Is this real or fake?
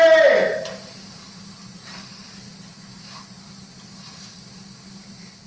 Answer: real